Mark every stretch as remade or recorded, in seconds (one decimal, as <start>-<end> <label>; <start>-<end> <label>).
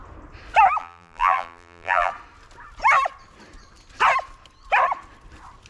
0.0-0.8 recorded; 0.8-2.1 remade; 2.1-5.7 recorded